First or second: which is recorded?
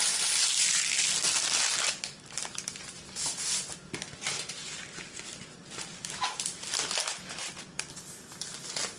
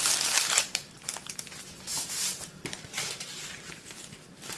first